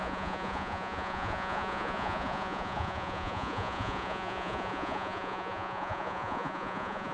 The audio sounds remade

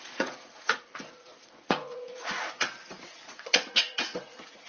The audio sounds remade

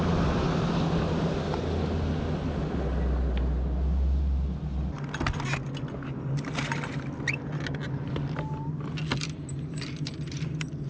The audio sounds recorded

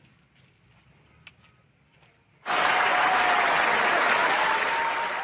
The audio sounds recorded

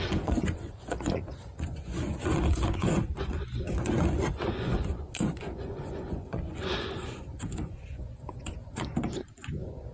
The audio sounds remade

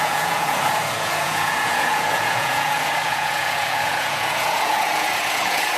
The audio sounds remade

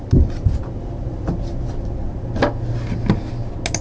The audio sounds recorded